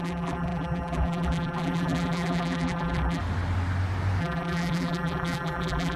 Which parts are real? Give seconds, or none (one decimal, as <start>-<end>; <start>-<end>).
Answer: 3.2-4.2